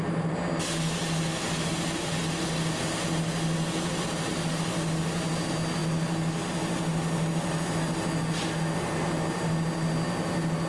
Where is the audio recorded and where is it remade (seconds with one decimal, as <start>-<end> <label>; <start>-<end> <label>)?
0.0-10.7 recorded